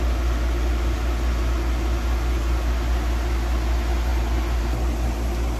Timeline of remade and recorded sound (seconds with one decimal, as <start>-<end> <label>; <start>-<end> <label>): 0.0-5.6 recorded